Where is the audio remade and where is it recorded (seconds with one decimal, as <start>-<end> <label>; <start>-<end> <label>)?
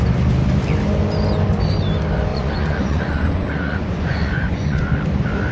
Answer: 0.0-2.3 recorded; 2.3-4.9 remade; 4.9-5.5 recorded